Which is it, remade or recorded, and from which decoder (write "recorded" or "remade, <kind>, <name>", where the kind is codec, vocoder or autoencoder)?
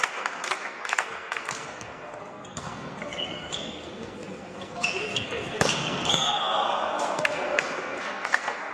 remade, codec, SNAC